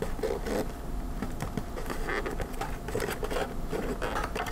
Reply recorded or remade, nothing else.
recorded